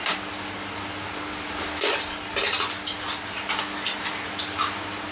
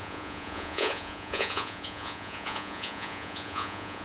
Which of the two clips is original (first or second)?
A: first